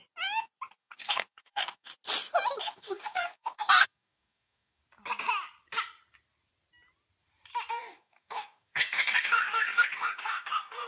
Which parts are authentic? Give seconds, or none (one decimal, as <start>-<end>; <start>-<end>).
0.0-0.8; 1.9-2.6; 4.8-7.7

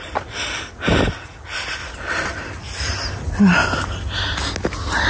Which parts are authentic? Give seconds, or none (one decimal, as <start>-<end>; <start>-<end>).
0.0-5.1

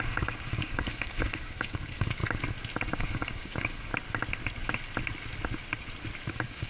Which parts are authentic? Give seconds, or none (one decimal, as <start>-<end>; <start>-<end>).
2.2-2.9; 3.9-6.3

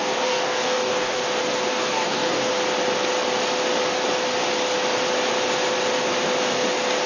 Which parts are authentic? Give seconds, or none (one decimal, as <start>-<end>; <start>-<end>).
1.2-1.7; 2.5-7.1